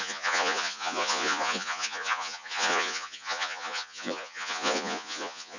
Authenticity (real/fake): fake